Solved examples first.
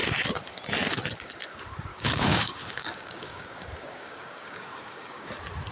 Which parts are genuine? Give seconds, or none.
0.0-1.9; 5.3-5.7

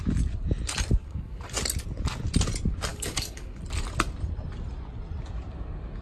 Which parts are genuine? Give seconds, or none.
0.0-1.0; 1.5-2.9; 3.6-6.0

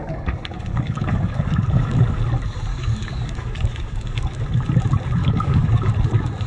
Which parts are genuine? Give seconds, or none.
2.2-2.7; 4.4-5.2; 5.9-6.5